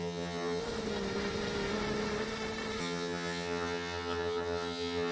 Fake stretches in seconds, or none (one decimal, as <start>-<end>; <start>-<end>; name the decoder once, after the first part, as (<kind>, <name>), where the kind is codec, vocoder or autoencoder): 0.0-0.6 (vocoder, HiFi-GAN); 2.8-5.1